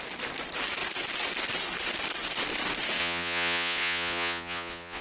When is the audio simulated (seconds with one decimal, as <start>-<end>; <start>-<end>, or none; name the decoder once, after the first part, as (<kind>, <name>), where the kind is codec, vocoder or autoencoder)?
3.0-5.0 (vocoder, Vocos)